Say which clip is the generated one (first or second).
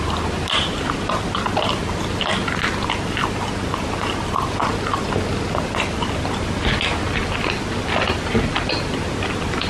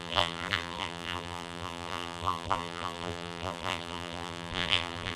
second